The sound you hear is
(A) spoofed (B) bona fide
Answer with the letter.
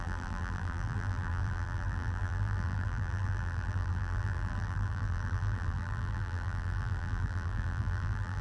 A